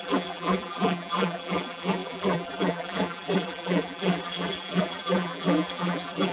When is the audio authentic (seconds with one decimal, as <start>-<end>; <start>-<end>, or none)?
none